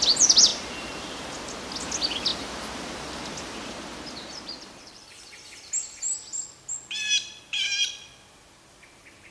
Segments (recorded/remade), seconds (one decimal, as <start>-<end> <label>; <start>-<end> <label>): 0.0-9.3 recorded